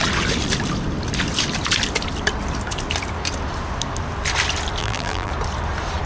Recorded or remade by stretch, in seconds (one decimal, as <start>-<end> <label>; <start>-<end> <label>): 0.0-4.8 recorded; 4.8-5.3 remade; 5.3-6.1 recorded